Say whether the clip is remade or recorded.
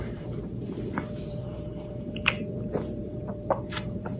remade